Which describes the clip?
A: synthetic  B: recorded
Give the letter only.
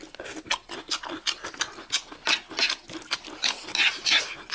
B